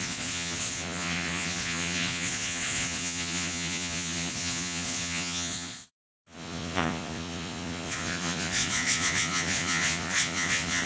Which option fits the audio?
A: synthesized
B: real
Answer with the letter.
A